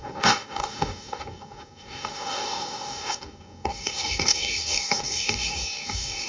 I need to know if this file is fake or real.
fake